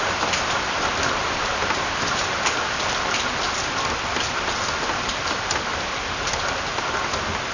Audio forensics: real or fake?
fake